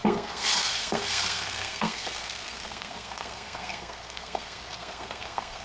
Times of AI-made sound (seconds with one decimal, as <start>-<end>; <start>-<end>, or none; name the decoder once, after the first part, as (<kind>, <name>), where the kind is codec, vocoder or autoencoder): 0.0-5.6 (codec, SNAC)